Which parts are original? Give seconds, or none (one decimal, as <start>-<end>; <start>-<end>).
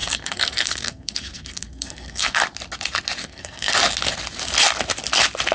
2.4-3.2; 3.7-5.5